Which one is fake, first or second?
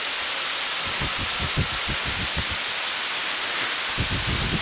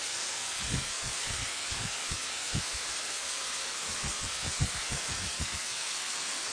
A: second